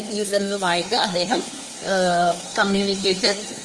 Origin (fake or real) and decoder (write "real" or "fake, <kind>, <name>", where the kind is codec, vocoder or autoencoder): fake, codec, SNAC